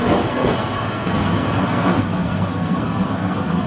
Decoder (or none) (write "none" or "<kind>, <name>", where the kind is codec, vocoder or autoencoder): codec, SNAC